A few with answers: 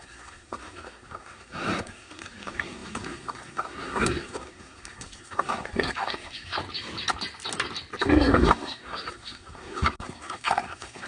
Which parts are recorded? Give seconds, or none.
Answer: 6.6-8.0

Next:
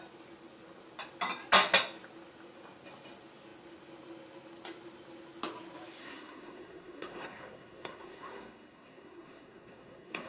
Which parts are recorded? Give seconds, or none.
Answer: 0.0-6.0

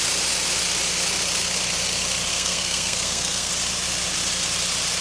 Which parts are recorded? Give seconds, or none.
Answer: 0.0-2.3; 3.5-5.0

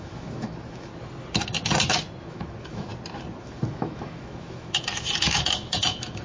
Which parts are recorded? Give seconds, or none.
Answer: 0.9-2.2; 2.9-3.4

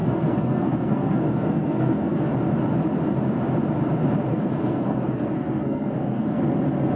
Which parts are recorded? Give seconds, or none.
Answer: 2.3-4.3; 6.4-7.0

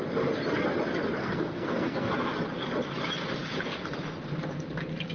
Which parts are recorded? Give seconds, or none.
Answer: 0.0-1.2; 2.1-5.1